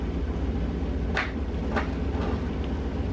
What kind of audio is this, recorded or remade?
recorded